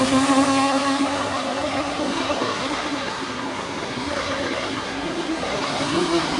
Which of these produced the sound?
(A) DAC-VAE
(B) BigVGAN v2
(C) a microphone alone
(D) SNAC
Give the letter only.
D